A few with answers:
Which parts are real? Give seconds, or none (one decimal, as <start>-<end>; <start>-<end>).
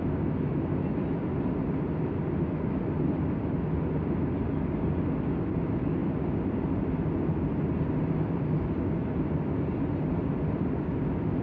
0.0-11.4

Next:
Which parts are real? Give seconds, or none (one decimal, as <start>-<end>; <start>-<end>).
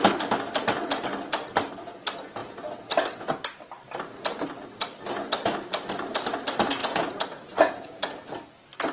0.0-6.8; 8.2-8.9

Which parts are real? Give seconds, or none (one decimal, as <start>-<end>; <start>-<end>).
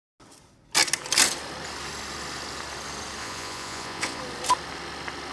0.0-3.2; 4.2-5.3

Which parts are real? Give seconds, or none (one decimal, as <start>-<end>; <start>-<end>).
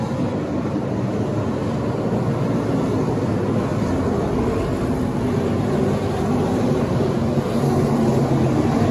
0.0-8.9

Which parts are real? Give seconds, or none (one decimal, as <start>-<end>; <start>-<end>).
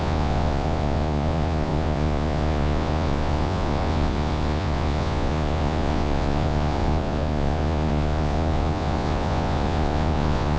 none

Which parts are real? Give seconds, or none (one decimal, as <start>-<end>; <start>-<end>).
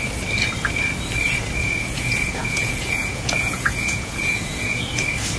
0.0-1.6; 4.8-5.4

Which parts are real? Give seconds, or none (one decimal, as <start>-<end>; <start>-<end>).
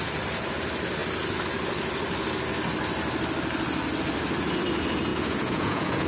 0.0-5.1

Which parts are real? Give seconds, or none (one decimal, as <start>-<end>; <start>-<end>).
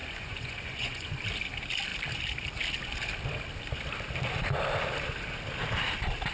1.2-6.3